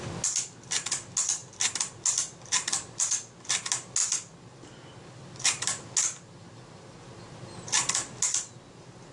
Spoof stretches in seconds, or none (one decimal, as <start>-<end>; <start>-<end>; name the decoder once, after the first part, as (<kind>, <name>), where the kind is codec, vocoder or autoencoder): none

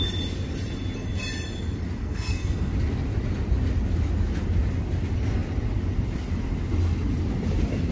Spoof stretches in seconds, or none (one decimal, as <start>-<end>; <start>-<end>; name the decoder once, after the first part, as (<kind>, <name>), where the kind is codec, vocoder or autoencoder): 2.0-2.7 (codec, SNAC)

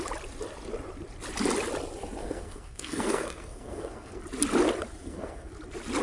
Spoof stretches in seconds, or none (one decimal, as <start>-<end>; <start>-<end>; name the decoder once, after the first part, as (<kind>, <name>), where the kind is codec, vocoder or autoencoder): 2.2-4.2 (codec, SNAC); 5.0-5.5

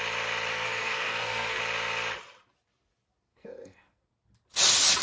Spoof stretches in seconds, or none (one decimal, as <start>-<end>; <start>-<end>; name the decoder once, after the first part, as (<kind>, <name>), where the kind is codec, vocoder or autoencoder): 0.5-1.6 (codec, SNAC); 3.3-4.0